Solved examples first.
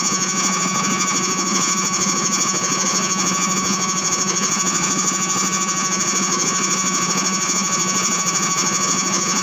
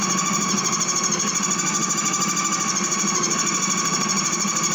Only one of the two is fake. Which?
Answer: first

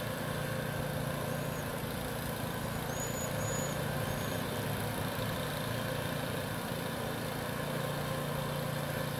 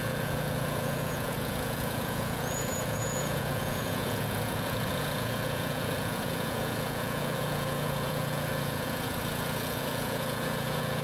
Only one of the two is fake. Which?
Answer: second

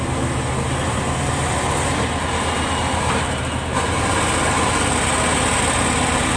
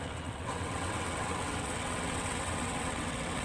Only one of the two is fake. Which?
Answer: second